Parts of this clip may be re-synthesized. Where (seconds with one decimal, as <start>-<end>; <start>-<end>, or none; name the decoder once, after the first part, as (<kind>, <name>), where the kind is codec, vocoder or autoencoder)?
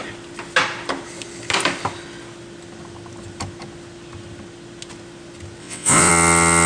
5.6-6.1 (vocoder, WaveNeXt)